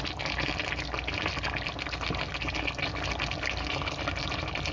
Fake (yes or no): no